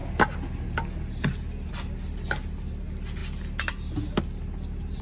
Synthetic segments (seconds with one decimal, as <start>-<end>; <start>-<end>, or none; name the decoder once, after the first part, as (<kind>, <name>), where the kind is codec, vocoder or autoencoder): none